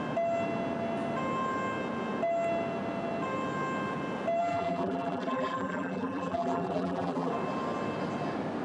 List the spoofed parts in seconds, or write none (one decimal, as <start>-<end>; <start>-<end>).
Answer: 4.4-7.3